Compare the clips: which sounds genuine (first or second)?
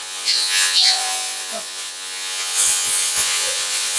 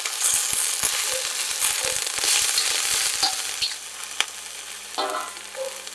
second